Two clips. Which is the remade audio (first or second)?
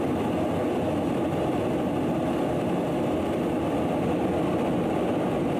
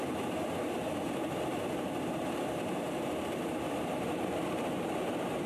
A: second